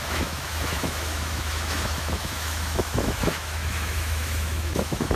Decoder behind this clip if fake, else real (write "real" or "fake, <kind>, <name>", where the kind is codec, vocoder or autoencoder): fake, autoencoder, DAC-VAE